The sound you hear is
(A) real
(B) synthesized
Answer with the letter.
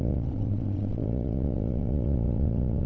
B